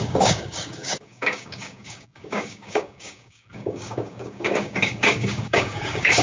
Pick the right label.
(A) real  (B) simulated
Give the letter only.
B